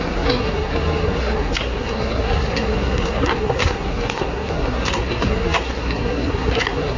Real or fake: fake